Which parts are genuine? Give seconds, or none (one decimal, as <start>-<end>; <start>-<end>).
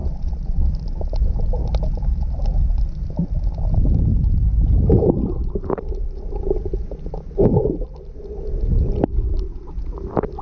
0.7-10.4